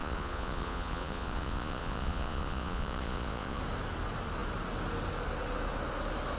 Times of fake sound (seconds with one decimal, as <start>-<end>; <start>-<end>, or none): 0.0-3.6